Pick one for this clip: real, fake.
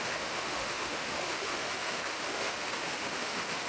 fake